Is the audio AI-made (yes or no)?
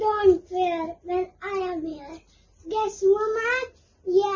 no